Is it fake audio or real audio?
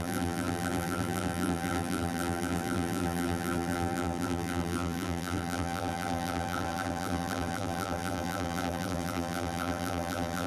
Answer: fake